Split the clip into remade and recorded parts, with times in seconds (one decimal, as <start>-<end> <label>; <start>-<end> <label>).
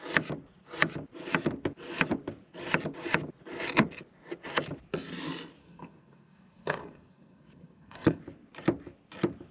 0.0-5.6 recorded; 5.6-8.2 remade; 8.2-9.5 recorded